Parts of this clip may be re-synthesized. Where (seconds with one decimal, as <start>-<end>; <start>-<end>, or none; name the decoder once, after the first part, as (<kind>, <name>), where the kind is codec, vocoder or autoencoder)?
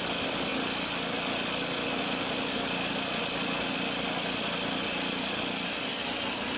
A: 0.0-0.5 (vocoder, BigVGAN v2); 2.5-2.9; 5.9-6.6